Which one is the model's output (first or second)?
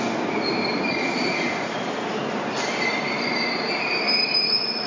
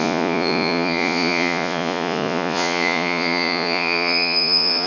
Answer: second